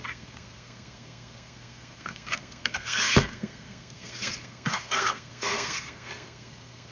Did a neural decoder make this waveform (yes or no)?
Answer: yes